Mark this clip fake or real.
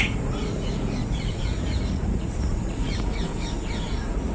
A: fake